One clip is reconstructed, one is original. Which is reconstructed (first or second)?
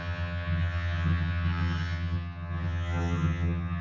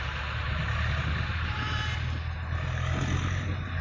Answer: first